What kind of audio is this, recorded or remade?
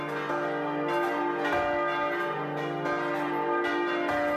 recorded